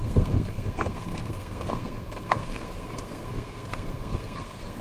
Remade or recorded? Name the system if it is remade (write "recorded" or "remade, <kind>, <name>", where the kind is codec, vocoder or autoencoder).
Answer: remade, codec, SNAC